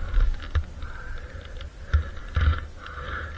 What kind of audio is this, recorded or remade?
recorded